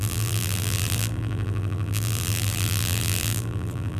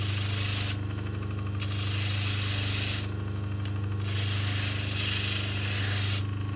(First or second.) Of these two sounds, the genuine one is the second